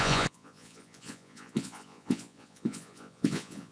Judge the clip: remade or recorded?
remade